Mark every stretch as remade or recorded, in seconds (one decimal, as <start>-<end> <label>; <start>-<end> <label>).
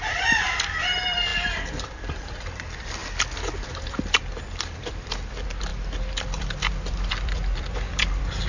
0.0-3.0 remade; 3.0-3.6 recorded; 3.6-8.5 remade